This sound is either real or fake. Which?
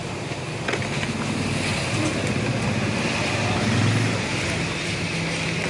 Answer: real